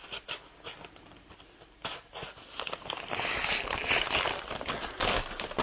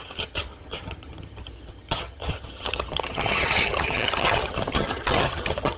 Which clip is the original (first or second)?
first